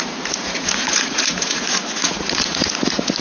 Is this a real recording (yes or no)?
no